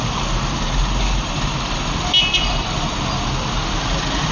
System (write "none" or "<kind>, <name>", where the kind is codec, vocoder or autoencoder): none